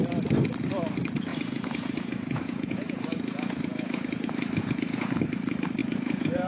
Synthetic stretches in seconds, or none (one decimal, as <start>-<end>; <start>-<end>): 1.3-5.2; 5.8-6.5